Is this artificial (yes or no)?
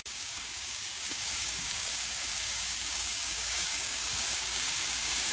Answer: yes